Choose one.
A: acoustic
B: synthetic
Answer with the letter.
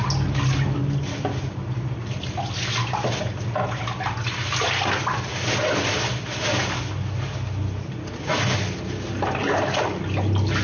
A